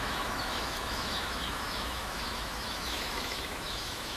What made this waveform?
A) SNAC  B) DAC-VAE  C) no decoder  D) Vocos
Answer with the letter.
B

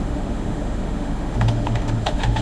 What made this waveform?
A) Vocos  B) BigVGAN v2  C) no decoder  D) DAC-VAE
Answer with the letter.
D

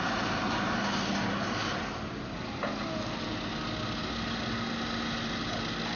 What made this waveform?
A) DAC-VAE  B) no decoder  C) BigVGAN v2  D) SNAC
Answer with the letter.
B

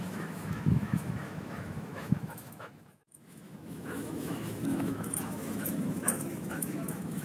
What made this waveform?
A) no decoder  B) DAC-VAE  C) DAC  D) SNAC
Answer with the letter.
B